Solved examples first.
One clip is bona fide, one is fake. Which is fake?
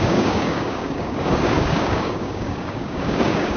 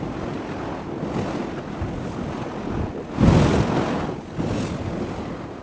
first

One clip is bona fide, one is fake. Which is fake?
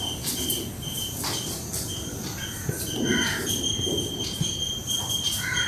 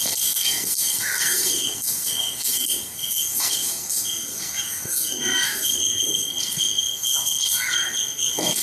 second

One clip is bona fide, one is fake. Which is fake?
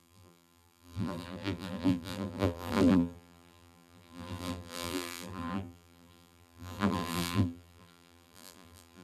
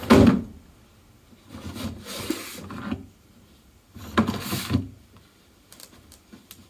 first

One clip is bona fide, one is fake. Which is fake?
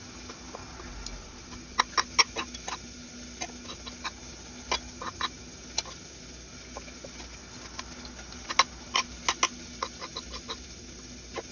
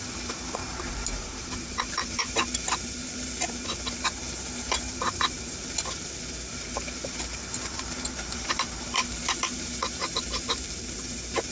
second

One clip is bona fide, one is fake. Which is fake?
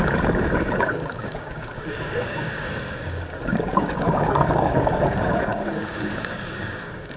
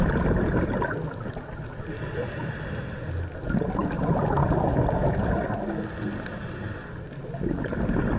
first